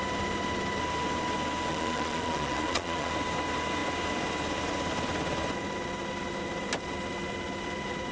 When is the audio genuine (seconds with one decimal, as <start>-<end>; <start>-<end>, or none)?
0.0-1.7; 3.1-8.1